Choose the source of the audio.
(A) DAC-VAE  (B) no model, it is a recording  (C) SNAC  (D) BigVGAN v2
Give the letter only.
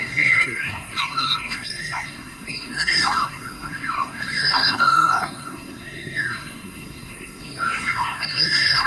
C